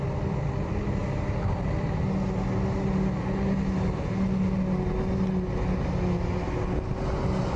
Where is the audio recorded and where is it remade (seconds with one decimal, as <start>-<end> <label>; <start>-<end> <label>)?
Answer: 0.0-7.6 recorded